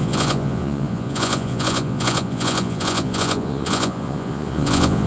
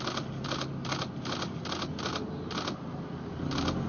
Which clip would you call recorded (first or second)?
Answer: second